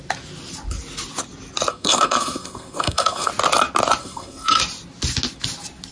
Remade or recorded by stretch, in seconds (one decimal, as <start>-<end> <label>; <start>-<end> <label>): 0.0-1.7 recorded; 1.7-3.3 remade; 3.3-4.0 recorded; 4.0-4.6 remade; 4.6-5.9 recorded